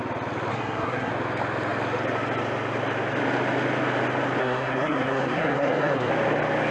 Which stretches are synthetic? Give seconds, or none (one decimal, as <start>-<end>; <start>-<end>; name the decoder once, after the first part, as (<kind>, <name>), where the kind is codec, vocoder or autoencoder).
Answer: 0.5-1.1 (codec, SNAC); 4.4-6.1